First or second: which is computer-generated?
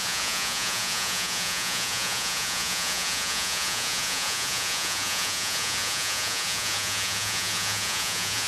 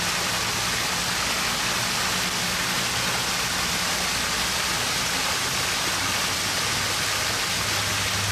first